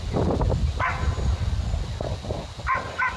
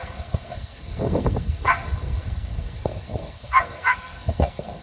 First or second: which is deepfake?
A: second